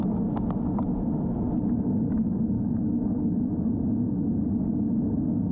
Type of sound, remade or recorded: recorded